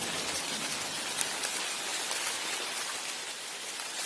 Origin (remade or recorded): recorded